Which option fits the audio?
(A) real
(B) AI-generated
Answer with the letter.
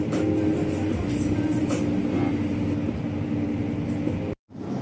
A